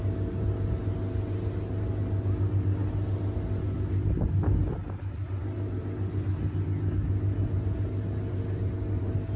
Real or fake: real